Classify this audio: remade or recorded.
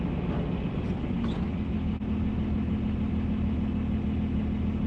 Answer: recorded